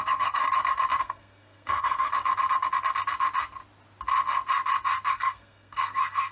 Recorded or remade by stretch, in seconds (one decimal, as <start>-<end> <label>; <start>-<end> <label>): 0.0-0.4 remade; 0.4-1.0 recorded; 1.0-2.1 remade; 2.1-5.1 recorded; 5.1-6.3 remade